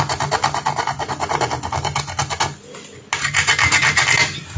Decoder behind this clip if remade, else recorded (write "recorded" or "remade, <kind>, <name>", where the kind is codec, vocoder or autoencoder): recorded